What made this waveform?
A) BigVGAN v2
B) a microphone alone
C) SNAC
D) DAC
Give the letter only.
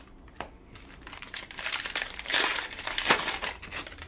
A